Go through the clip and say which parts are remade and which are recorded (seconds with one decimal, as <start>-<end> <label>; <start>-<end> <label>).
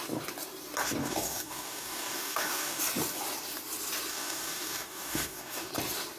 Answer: 0.0-1.0 recorded; 1.0-2.8 remade; 2.8-4.1 recorded; 4.1-5.7 remade; 5.7-6.2 recorded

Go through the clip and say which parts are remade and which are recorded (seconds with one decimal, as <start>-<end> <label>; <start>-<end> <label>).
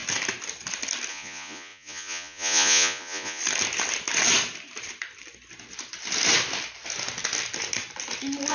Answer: 0.0-1.1 recorded; 1.1-3.4 remade; 3.4-8.5 recorded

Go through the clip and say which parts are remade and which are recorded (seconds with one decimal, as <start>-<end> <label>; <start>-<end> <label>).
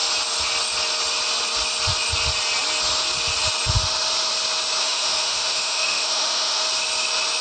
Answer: 0.0-4.8 recorded; 4.8-6.6 remade; 6.6-7.4 recorded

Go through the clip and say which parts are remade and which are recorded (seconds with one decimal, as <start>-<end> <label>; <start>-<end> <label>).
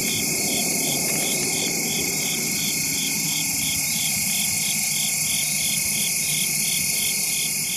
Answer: 0.0-4.2 remade; 4.2-7.8 recorded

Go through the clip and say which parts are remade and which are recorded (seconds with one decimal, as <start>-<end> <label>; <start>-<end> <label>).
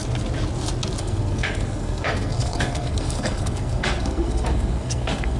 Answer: 0.0-1.0 recorded; 1.0-5.4 remade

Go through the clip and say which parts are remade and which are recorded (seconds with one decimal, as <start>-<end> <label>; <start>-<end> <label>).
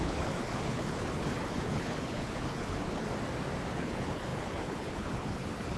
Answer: 0.0-3.1 remade; 3.1-3.7 recorded; 3.7-5.8 remade